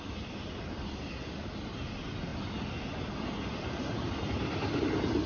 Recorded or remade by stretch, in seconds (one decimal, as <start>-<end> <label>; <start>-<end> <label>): 0.0-5.3 recorded

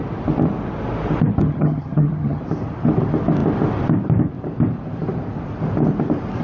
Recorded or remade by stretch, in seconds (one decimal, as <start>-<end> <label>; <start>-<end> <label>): 0.0-1.4 recorded; 1.4-2.4 remade; 2.4-6.4 recorded